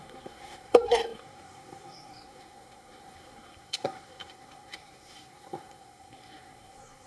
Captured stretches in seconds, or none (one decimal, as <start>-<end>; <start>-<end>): none